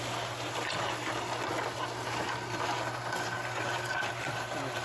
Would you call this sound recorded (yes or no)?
yes